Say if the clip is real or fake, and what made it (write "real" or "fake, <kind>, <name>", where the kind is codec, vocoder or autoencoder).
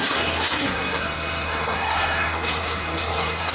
fake, codec, SNAC